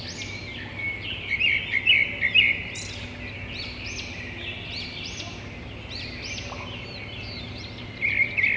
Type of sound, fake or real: real